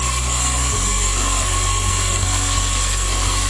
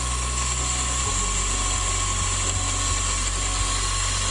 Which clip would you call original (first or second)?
second